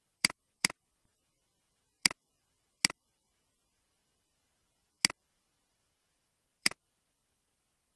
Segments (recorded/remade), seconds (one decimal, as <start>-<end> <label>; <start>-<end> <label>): 0.0-8.0 remade

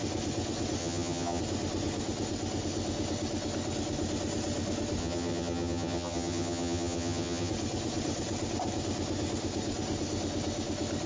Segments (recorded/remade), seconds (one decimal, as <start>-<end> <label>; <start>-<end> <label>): 0.0-0.8 recorded; 0.8-1.4 remade; 1.4-5.0 recorded; 5.0-7.5 remade; 7.5-11.1 recorded